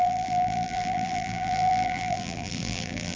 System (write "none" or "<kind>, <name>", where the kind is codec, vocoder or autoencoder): vocoder, BigVGAN v2